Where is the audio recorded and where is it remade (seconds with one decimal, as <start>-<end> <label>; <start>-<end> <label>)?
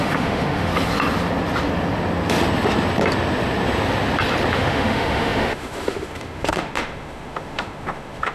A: 0.0-0.7 remade; 0.7-4.5 recorded; 4.5-8.3 remade